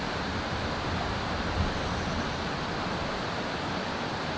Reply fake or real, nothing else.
real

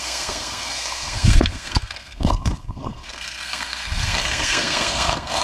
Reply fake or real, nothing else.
fake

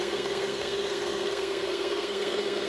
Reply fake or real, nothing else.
fake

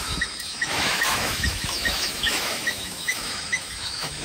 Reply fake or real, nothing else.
fake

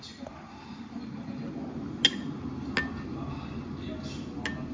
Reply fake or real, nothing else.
real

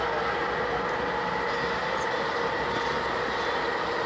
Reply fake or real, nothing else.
real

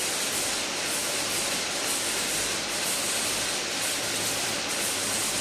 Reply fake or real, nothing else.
fake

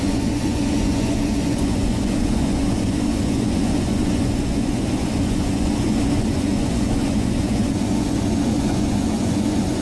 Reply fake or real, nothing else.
fake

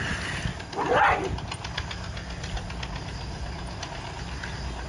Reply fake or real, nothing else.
real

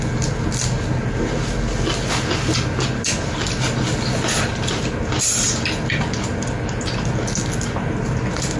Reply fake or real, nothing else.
real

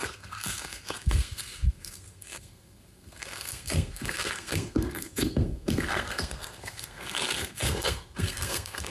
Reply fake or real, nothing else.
fake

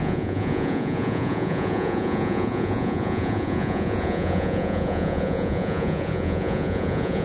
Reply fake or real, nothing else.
fake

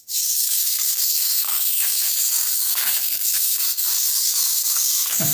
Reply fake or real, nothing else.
fake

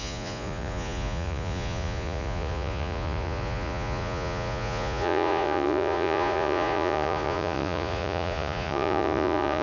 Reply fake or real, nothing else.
fake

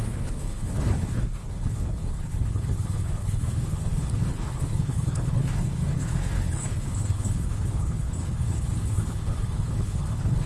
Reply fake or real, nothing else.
fake